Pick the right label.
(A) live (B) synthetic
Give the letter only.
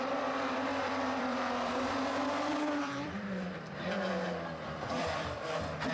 B